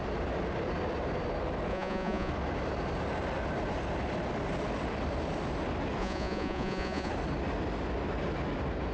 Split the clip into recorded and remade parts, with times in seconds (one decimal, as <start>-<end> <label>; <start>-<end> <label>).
0.0-1.7 recorded; 1.7-2.3 remade; 2.3-6.0 recorded; 6.0-7.1 remade; 7.1-8.9 recorded